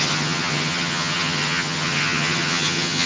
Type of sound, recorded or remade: remade